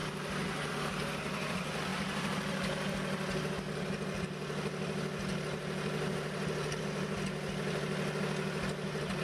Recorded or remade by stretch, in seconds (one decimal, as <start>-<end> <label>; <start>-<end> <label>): 0.0-9.2 recorded